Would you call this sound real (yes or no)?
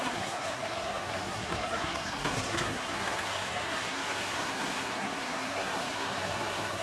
no